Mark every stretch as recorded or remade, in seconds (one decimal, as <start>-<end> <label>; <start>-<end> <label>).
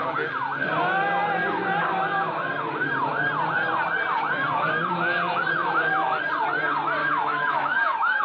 0.0-5.6 recorded; 5.6-6.2 remade; 6.2-7.0 recorded; 7.0-8.2 remade